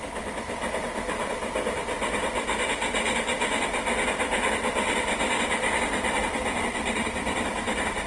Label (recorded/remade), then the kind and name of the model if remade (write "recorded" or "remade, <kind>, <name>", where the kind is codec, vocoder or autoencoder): recorded